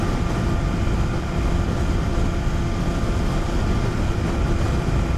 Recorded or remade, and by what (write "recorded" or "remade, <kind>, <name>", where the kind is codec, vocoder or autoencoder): recorded